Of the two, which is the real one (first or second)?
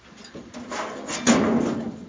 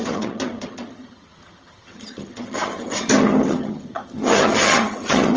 first